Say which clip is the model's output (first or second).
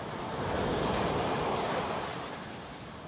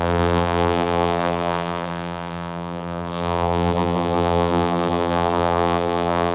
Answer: second